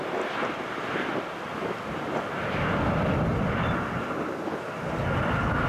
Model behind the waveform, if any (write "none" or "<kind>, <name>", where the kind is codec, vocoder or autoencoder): none